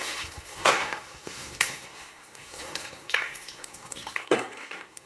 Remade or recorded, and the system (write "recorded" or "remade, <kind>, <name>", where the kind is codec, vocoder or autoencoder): remade, codec, SNAC